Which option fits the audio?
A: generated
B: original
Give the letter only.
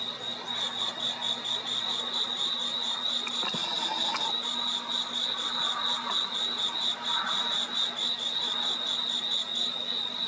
B